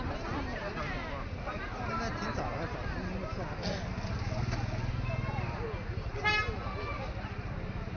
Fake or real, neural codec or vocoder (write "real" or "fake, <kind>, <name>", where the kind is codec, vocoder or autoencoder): real